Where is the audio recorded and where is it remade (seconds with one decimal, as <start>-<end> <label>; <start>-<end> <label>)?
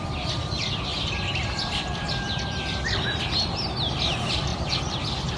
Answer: 0.0-0.4 recorded; 0.4-3.2 remade; 3.2-4.5 recorded; 4.5-5.0 remade; 5.0-5.4 recorded